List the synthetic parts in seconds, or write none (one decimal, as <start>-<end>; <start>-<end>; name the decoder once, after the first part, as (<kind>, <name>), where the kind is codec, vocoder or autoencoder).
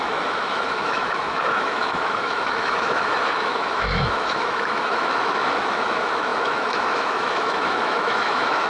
0.0-8.7 (autoencoder, DAC-VAE)